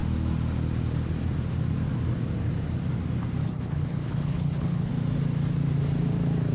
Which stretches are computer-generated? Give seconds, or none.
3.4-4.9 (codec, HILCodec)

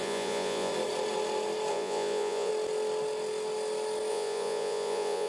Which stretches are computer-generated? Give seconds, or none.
0.0-0.7 (vocoder, Vocos); 1.7-2.5; 4.1-5.3

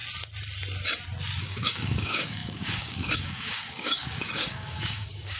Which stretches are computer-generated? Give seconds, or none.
1.4-5.4 (codec, DAC)